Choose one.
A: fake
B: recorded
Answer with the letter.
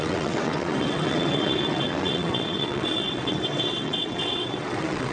A